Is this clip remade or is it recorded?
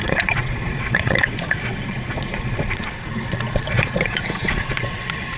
remade